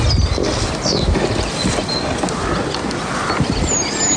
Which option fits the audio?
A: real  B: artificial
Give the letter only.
A